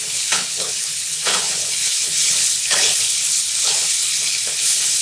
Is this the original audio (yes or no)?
no